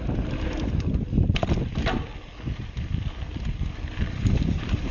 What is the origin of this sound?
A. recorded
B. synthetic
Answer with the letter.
A